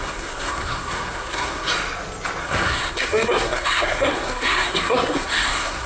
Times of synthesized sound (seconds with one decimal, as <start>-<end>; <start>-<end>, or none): 0.0-1.7; 2.4-5.9